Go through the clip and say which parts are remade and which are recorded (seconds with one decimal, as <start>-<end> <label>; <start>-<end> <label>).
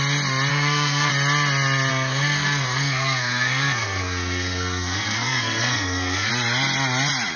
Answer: 0.0-0.5 recorded; 0.5-1.1 remade; 1.1-1.9 recorded; 1.9-6.3 remade; 6.3-7.4 recorded